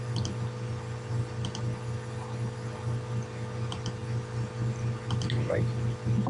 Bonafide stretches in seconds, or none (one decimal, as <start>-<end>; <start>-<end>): 0.0-6.3

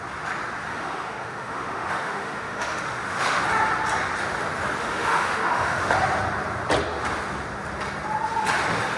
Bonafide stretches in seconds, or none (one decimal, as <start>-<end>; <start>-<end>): 0.0-0.7; 3.4-4.8; 5.9-9.0

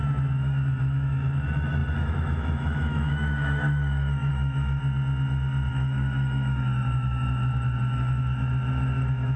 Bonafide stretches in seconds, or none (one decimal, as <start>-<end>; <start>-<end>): 0.0-0.8; 4.8-5.7

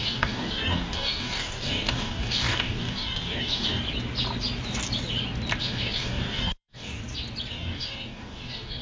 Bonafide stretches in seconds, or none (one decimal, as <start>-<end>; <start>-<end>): 3.8-5.6; 7.0-7.5